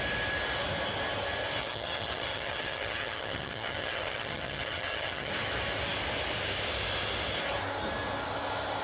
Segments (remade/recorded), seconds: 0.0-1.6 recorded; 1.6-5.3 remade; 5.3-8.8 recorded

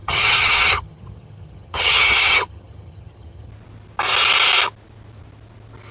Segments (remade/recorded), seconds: 0.0-3.5 remade; 3.5-5.9 recorded

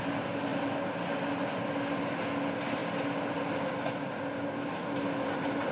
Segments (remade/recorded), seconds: 0.0-5.7 recorded

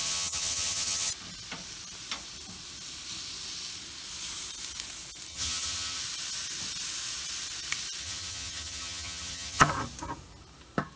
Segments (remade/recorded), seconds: 0.0-1.1 remade; 1.1-5.3 recorded; 5.3-6.0 remade; 6.0-8.0 recorded; 8.0-9.7 remade; 9.7-11.0 recorded

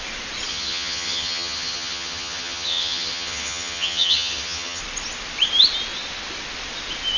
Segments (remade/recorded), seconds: 0.0-0.5 recorded; 0.5-4.8 remade; 4.8-7.2 recorded